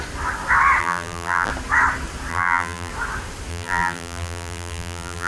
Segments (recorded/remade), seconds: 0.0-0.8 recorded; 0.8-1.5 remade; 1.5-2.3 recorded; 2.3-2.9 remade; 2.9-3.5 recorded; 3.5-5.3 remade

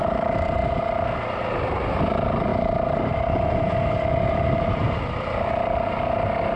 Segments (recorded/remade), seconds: 0.0-0.6 remade; 0.6-1.9 recorded; 1.9-6.6 remade